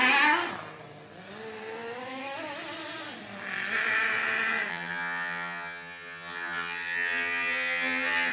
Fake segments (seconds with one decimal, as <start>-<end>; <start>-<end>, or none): 4.7-8.3